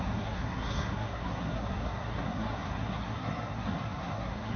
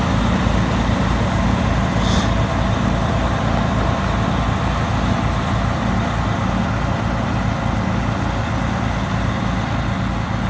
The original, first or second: second